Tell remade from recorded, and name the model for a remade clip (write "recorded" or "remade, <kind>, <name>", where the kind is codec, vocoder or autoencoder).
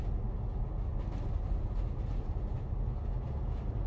recorded